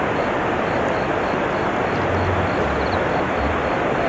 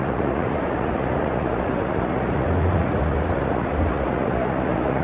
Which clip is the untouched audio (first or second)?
first